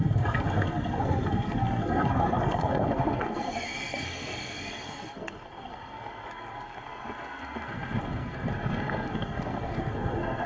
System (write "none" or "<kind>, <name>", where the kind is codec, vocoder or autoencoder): codec, SNAC